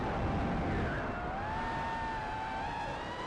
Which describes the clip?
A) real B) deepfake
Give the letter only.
A